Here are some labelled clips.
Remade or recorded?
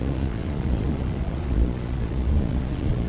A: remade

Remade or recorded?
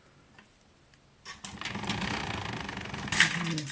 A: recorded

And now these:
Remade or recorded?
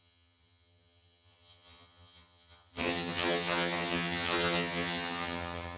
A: remade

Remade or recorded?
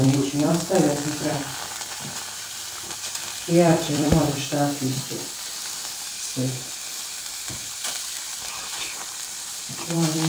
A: remade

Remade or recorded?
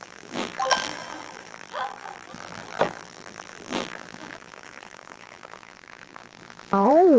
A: remade